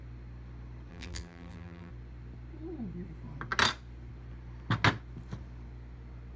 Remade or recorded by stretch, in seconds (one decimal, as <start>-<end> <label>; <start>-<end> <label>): 0.0-0.9 recorded; 0.9-1.9 remade; 1.9-6.4 recorded